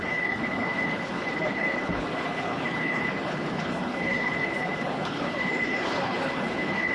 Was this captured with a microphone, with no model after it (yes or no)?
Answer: no